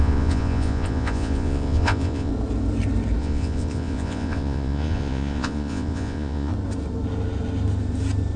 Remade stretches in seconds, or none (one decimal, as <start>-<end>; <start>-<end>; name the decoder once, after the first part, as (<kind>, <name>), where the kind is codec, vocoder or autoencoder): 0.0-2.3 (vocoder, Vocos); 3.2-6.5